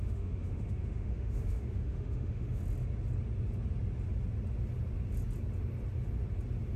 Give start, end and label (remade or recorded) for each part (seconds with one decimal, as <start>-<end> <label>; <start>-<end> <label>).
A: 0.0-2.6 remade; 2.6-6.8 recorded